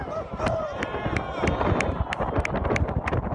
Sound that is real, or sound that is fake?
real